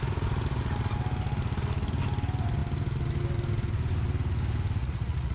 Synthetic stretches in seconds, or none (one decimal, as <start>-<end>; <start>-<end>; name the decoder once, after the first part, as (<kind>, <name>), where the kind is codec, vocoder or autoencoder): 4.8-5.3 (vocoder, Vocos)